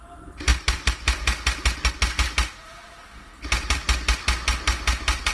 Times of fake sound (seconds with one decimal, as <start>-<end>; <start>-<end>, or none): none